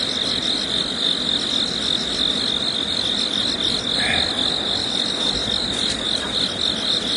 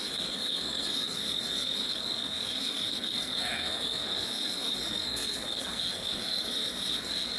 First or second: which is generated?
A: second